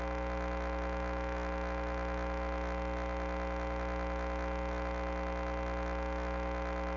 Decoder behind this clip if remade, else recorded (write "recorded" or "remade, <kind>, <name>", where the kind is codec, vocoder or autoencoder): recorded